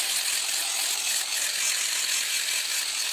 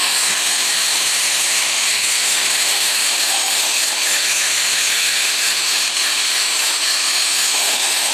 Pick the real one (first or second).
first